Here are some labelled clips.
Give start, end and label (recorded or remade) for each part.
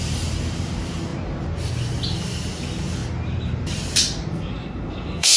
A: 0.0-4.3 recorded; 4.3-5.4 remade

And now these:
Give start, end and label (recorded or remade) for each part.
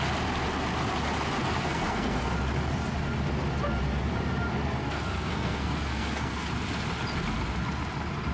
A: 0.0-1.4 recorded; 1.4-2.3 remade; 2.3-4.8 recorded; 4.8-6.5 remade; 6.5-8.3 recorded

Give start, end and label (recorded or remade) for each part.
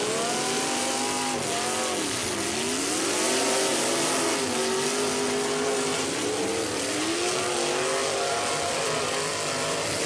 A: 0.0-10.1 recorded